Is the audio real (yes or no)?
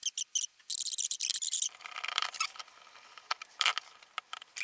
yes